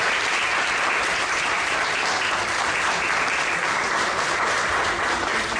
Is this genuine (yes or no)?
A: no